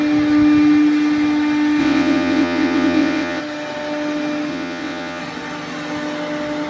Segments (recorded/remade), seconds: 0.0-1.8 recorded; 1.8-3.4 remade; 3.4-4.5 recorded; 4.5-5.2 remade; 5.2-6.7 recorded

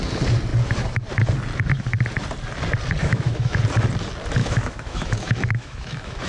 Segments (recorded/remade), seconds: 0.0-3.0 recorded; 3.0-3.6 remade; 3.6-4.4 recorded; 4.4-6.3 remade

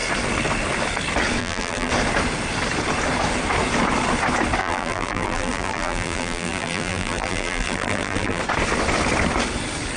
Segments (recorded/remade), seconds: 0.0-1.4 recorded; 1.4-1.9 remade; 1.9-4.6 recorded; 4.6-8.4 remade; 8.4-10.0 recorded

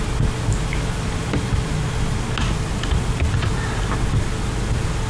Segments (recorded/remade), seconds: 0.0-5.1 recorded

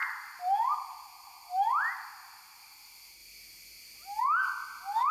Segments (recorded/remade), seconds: 0.0-5.1 recorded

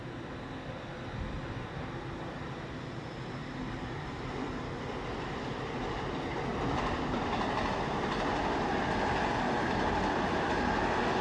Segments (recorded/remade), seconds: 0.0-3.4 recorded; 3.4-4.3 remade; 4.3-11.2 recorded

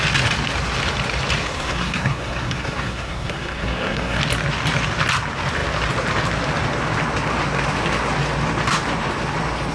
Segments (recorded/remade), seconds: 0.0-1.4 recorded; 1.4-4.2 remade; 4.2-9.7 recorded

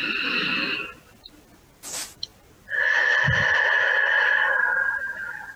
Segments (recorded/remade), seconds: 0.0-5.6 recorded